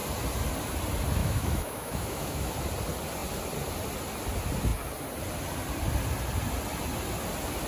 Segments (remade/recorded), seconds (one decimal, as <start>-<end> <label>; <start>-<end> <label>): 0.0-1.2 recorded; 1.2-2.5 remade; 2.5-7.7 recorded